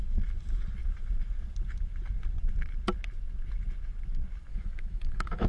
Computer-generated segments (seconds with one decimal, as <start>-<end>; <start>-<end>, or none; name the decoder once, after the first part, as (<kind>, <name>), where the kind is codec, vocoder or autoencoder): 4.5-5.5 (autoencoder, DAC-VAE)